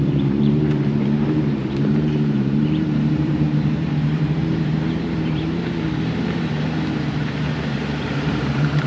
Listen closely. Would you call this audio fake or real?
fake